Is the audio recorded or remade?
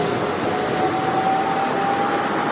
recorded